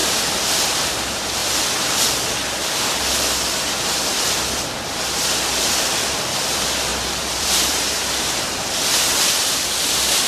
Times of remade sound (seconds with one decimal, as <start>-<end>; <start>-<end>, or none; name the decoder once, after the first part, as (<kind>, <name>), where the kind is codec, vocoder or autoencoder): 0.0-1.4 (vocoder, BigVGAN v2); 5.6-10.3